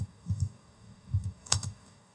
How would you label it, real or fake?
fake